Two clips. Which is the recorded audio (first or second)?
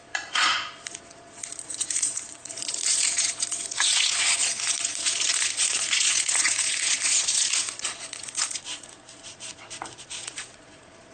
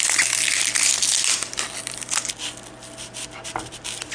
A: second